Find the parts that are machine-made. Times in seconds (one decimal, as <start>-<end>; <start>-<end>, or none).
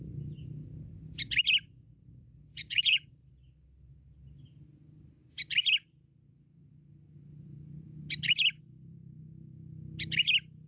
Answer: 2.5-3.1